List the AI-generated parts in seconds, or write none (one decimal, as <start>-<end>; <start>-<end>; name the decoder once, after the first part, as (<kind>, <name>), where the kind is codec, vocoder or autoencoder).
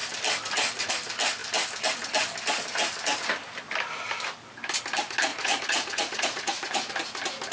5.3-6.9 (vocoder, Vocos)